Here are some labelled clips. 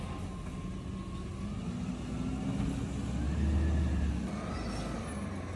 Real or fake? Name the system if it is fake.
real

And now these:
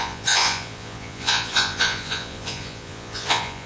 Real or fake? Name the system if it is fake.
fake, vocoder, Vocos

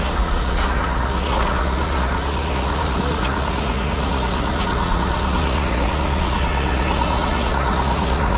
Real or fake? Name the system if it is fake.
fake, vocoder, Vocos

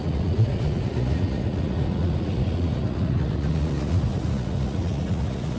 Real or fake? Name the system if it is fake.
fake, vocoder, Vocos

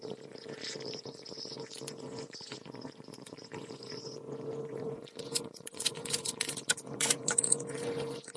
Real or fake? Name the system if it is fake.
fake, vocoder, Vocos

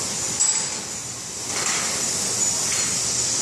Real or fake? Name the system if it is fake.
real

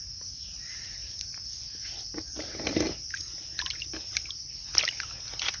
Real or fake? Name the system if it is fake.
real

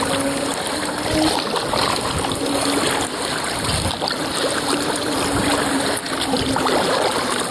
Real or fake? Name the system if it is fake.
real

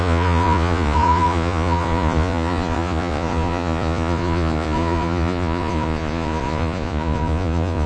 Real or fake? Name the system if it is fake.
fake, vocoder, Vocos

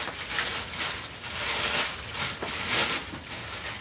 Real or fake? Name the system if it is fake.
real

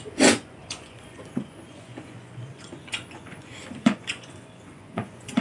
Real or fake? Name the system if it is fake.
fake, vocoder, Vocos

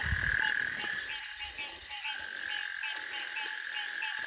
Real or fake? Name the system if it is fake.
real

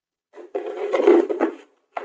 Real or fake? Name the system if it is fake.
fake, vocoder, Vocos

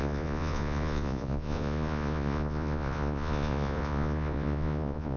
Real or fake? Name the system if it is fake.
fake, vocoder, Vocos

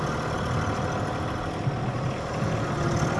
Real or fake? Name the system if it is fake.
real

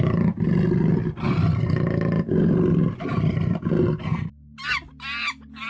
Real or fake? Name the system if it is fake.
real